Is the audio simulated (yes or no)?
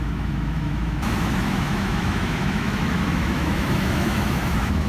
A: yes